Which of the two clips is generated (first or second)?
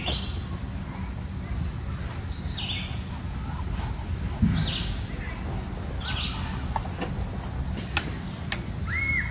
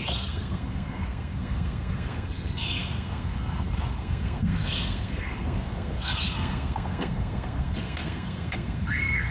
second